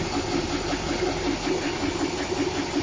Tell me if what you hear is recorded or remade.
recorded